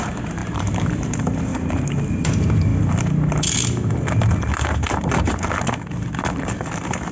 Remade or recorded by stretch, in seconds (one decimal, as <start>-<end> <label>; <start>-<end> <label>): 0.0-0.4 recorded; 0.4-2.3 remade; 2.3-7.1 recorded